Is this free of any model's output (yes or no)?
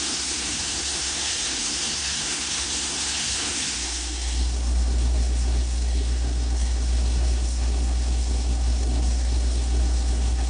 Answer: no